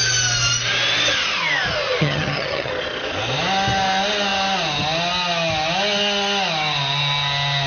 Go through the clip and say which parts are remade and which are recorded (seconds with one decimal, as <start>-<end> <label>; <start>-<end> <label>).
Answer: 0.0-2.0 recorded; 2.0-2.7 remade; 2.7-7.7 recorded